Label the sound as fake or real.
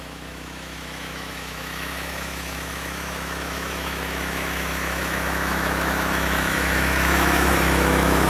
fake